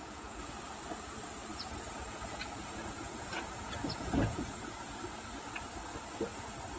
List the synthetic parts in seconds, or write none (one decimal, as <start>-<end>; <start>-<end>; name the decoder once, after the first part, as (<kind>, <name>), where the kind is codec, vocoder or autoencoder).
0.0-0.5 (vocoder, Vocos); 1.5-5.0